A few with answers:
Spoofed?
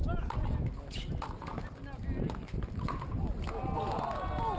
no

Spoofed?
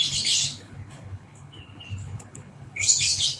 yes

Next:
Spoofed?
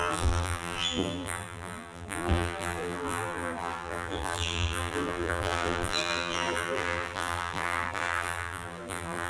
yes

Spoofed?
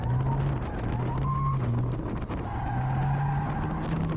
no